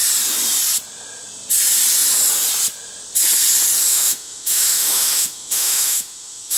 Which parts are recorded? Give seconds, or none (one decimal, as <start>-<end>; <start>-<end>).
0.0-3.9

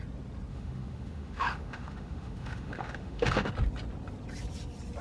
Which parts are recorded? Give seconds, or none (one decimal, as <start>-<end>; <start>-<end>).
0.0-0.5; 3.5-5.0

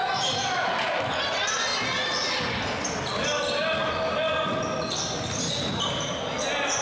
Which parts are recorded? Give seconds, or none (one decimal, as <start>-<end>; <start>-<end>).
0.0-6.8

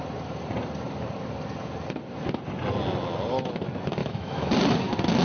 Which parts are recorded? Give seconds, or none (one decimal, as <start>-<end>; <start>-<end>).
0.0-4.0; 4.5-5.2

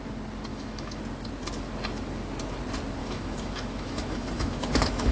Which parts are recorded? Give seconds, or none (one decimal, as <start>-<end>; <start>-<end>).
0.0-0.5; 1.0-3.0

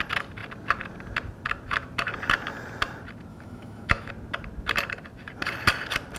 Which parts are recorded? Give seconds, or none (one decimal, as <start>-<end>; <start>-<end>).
0.0-3.3; 4.1-6.2

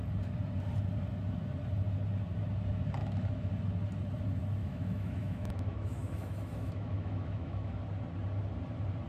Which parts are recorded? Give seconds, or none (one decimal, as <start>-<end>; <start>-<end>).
0.0-3.0; 3.5-4.6; 7.8-9.1

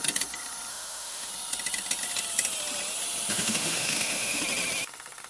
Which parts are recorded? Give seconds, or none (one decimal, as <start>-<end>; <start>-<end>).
0.0-0.7; 1.3-3.3; 4.4-5.3